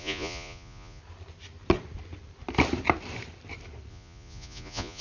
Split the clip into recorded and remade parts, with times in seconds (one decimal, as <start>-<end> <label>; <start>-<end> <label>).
0.0-1.0 remade; 1.0-3.9 recorded; 3.9-5.0 remade